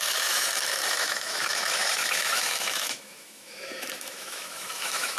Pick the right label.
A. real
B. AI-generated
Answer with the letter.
B